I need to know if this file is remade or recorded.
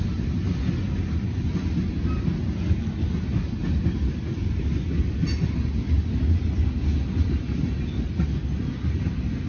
recorded